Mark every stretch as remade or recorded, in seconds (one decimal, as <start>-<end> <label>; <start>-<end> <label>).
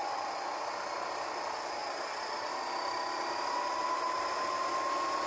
0.0-5.3 recorded